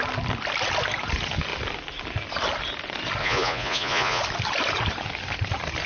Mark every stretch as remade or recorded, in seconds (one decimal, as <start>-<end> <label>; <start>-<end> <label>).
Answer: 0.0-3.2 recorded; 3.2-4.2 remade; 4.2-5.9 recorded